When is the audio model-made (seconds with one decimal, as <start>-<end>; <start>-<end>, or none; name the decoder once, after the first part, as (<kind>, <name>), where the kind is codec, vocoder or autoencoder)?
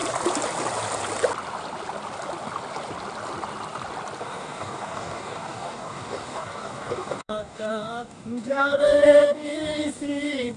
4.2-10.6 (codec, DAC)